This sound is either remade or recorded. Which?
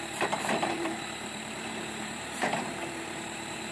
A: remade